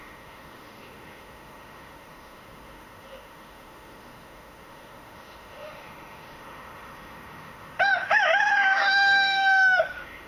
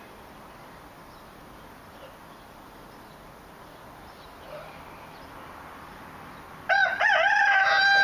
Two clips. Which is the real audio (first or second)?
second